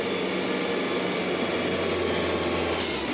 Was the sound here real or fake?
real